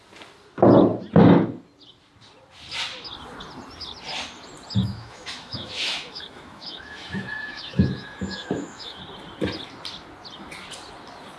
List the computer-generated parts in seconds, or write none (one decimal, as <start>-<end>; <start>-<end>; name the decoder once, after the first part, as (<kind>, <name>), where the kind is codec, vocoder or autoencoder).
4.8-9.0 (autoencoder, DAC-VAE)